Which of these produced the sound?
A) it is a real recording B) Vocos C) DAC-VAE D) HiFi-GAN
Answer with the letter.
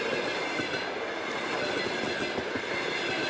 A